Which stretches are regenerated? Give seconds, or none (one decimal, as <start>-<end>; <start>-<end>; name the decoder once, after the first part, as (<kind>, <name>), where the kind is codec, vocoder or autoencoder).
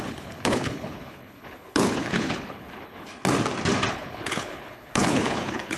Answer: 0.0-3.1 (codec, HILCodec); 3.9-5.8